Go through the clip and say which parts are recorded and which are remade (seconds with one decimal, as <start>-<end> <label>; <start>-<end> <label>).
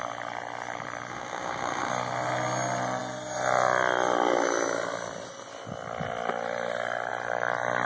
0.0-1.1 recorded; 1.1-1.9 remade; 1.9-7.8 recorded